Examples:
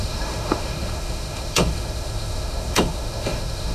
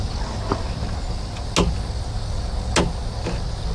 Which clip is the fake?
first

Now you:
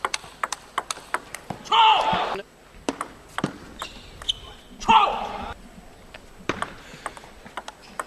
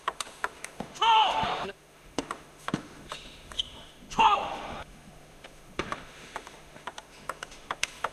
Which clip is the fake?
second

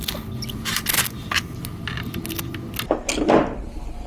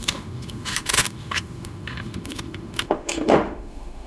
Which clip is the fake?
second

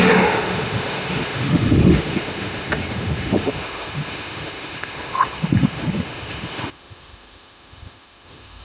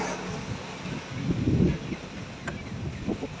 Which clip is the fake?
first